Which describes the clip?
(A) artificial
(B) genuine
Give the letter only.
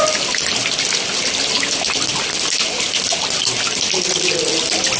B